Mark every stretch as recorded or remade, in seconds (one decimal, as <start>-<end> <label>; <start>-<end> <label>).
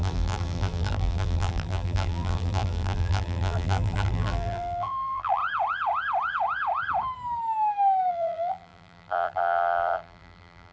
0.0-5.4 remade; 5.4-8.1 recorded; 8.1-10.7 remade